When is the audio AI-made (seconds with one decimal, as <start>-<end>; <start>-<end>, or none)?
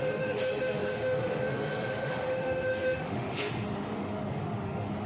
0.0-5.1